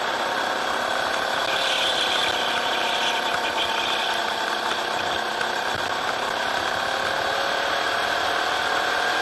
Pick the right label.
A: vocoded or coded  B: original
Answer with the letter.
B